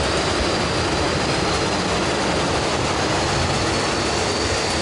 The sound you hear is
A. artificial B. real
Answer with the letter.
B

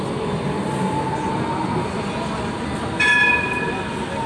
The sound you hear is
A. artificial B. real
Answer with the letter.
B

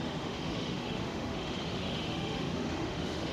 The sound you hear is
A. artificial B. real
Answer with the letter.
A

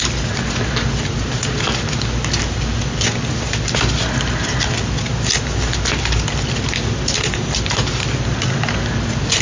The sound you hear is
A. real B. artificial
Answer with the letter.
A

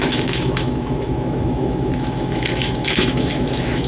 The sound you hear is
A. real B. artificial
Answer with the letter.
B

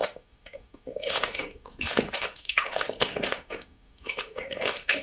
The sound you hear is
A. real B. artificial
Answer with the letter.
B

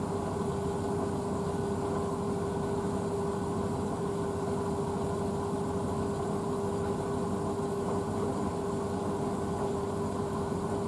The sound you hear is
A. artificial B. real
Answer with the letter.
B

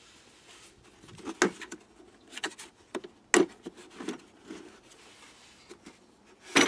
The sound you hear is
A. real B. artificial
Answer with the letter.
A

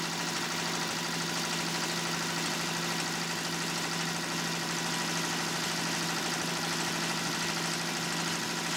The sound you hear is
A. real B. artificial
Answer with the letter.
A